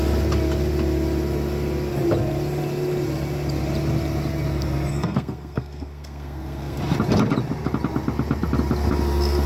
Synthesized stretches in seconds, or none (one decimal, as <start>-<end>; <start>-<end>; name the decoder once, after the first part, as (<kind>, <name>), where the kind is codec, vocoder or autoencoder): 4.9-6.8 (codec, SNAC)